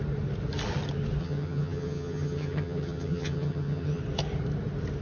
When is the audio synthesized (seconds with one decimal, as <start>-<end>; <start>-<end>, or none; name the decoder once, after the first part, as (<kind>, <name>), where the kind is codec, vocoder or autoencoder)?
1.2-4.0 (vocoder, HiFi-GAN)